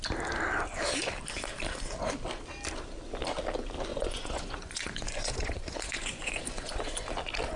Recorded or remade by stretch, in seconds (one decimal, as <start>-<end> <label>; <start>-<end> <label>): 0.0-3.9 recorded; 3.9-7.1 remade; 7.1-7.6 recorded